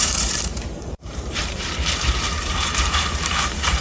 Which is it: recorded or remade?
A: remade